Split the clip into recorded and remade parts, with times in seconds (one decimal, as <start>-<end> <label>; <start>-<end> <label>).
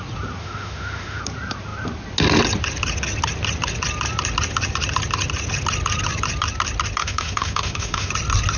0.0-0.4 recorded; 0.4-1.2 remade; 1.2-7.0 recorded; 7.0-8.1 remade; 8.1-8.6 recorded